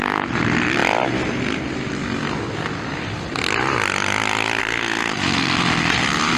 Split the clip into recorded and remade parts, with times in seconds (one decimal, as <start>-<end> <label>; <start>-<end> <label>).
0.0-4.6 recorded; 4.6-5.1 remade; 5.1-6.4 recorded